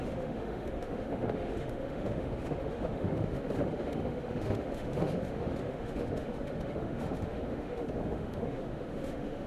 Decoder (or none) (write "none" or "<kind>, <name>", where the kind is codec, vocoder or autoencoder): autoencoder, DAC-VAE